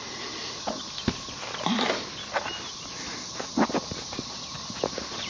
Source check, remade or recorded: recorded